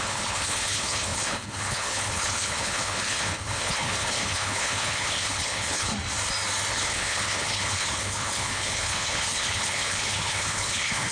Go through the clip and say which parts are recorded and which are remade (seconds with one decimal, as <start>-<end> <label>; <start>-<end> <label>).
0.0-5.9 remade; 5.9-6.7 recorded; 6.7-11.1 remade

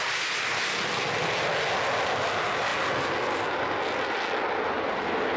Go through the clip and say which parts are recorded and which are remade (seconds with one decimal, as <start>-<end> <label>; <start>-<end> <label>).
0.0-5.4 recorded

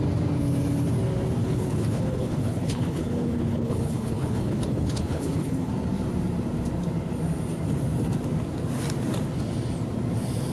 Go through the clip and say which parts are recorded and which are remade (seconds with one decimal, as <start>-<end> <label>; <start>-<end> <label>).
0.0-1.4 recorded; 1.4-5.7 remade; 5.7-10.5 recorded

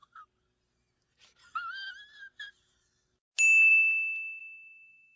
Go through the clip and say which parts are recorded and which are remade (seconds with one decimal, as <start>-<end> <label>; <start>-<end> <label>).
0.0-5.2 recorded

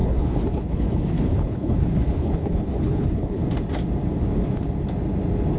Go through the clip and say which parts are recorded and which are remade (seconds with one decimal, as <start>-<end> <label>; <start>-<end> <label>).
0.0-3.4 remade; 3.4-5.6 recorded